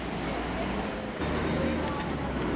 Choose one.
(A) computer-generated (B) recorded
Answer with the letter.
B